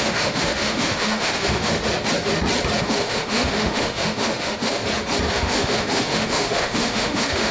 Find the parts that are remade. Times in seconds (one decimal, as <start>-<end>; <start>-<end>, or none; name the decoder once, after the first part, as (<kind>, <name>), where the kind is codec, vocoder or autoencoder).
0.0-1.8 (autoencoder, DAC-VAE); 2.8-4.8; 5.3-7.5